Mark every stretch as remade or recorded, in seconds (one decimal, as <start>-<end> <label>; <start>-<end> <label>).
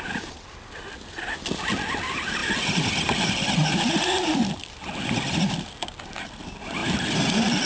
0.0-2.4 recorded; 2.4-3.9 remade; 3.9-7.7 recorded